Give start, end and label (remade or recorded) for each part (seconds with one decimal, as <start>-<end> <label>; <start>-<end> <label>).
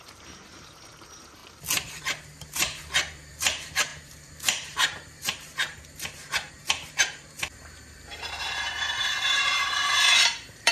0.0-1.4 remade; 1.4-2.0 recorded; 2.0-10.7 remade